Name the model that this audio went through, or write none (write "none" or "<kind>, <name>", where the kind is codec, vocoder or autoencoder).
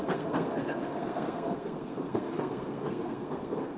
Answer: codec, SNAC